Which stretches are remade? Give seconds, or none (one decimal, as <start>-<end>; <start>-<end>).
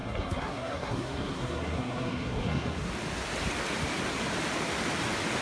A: 0.0-2.9